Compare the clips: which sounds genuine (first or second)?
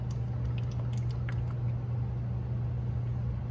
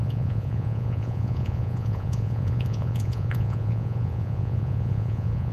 first